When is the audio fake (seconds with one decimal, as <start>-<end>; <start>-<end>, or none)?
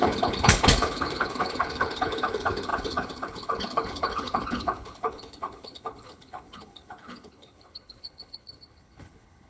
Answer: 0.0-9.5